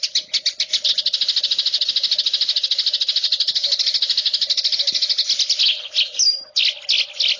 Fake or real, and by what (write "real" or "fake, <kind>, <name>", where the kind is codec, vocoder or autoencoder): real